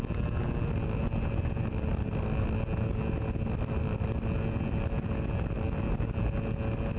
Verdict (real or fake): real